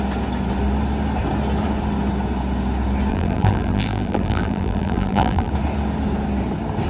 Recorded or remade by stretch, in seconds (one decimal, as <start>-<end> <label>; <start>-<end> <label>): 0.0-3.1 recorded; 3.1-5.5 remade; 5.5-6.9 recorded